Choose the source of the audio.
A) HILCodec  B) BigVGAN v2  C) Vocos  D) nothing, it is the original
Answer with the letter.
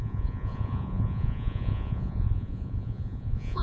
C